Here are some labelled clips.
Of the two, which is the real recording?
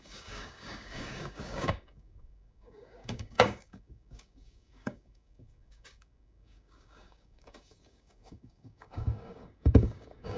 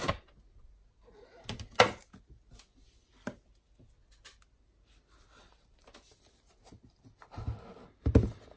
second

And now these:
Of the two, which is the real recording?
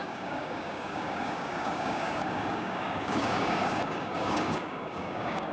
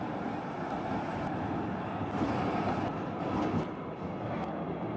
second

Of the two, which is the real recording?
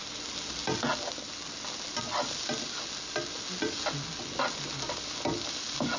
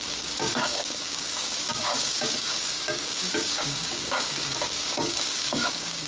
first